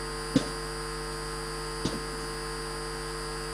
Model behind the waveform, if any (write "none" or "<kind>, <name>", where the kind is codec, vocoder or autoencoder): none